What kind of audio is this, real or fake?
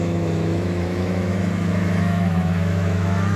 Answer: fake